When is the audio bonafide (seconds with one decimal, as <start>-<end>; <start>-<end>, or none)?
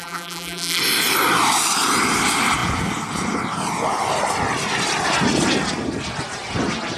0.8-7.0